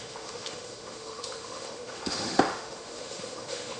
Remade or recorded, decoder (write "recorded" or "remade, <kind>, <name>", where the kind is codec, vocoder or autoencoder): remade, autoencoder, DAC-VAE